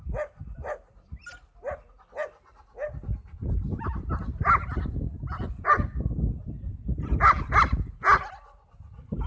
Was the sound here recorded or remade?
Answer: recorded